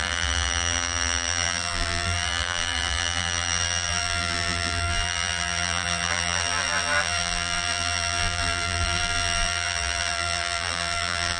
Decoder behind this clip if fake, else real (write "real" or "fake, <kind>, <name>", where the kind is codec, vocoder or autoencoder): fake, vocoder, BigVGAN v2